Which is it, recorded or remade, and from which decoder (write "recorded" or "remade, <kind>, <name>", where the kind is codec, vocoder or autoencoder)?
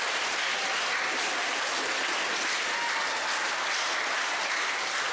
recorded